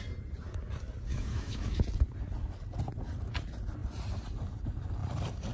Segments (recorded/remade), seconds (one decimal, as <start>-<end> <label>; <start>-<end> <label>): 0.0-1.1 recorded; 1.1-1.8 remade; 1.8-5.5 recorded